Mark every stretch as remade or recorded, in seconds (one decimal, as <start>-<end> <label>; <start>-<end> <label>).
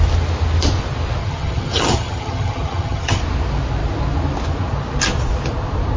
0.0-1.2 recorded; 1.2-3.2 remade; 3.2-6.0 recorded